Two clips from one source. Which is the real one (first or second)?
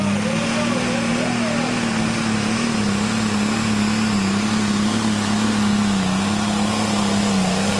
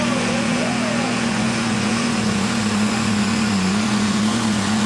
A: first